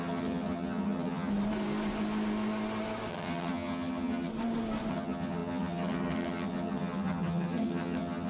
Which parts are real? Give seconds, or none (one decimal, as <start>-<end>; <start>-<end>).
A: 1.3-3.1; 4.3-4.9